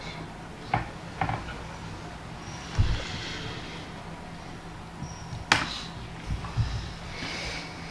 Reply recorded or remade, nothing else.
recorded